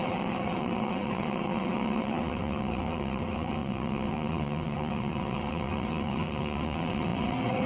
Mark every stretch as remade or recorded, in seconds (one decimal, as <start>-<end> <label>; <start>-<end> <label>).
0.0-7.7 remade